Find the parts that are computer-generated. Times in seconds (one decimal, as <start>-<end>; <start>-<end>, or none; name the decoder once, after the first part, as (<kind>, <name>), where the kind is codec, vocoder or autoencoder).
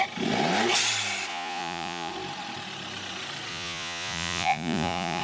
1.3-2.1 (vocoder, Vocos); 3.5-5.2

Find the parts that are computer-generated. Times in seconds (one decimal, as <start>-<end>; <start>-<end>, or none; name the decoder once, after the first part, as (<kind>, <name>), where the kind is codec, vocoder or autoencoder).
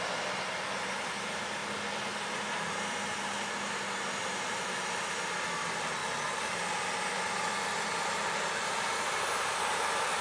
none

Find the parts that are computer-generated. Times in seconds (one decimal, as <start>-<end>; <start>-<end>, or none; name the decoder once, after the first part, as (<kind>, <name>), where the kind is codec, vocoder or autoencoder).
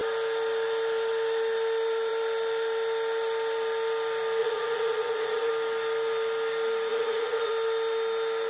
4.4-5.5 (vocoder, Vocos); 6.9-7.5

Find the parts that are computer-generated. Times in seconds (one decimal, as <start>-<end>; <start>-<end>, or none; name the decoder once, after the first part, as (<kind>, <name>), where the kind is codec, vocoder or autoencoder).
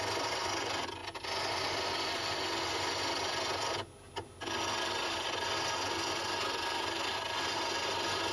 none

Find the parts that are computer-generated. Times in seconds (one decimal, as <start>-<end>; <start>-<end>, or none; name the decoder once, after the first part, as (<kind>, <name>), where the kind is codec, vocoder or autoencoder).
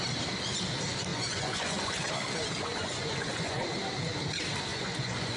1.1-2.0 (vocoder, Vocos); 2.7-3.6; 4.7-5.4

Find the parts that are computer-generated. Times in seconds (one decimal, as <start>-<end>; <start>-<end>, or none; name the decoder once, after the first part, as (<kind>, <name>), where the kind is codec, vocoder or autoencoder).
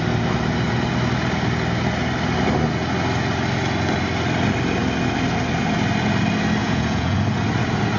6.6-7.2 (vocoder, Vocos)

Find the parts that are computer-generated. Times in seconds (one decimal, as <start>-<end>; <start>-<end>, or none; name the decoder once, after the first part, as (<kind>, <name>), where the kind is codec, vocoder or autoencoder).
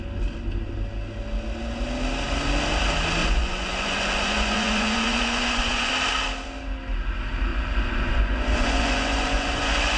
3.2-5.9 (vocoder, Vocos); 7.5-10.0